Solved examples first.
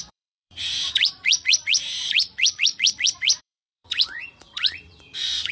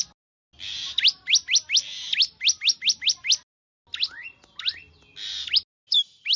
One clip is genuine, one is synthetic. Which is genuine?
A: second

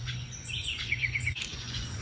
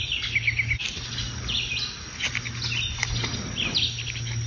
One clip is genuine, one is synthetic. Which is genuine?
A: second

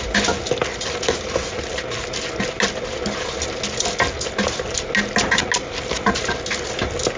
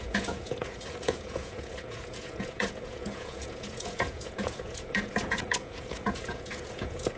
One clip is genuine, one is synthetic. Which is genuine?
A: first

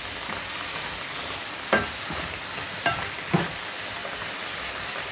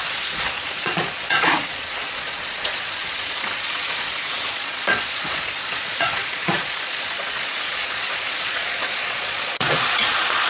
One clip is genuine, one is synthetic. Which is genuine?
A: first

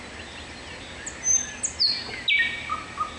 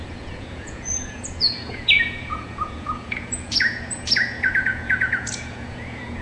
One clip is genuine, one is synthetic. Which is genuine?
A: first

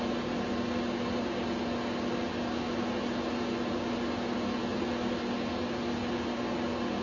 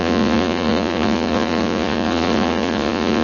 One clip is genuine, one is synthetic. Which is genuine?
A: first